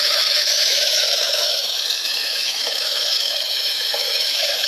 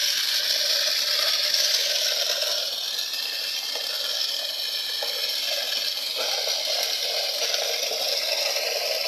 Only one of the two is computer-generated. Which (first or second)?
first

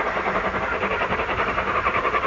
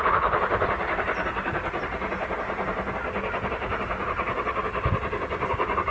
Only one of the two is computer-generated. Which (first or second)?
first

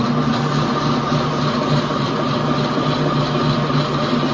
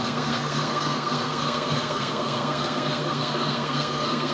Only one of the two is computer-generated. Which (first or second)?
second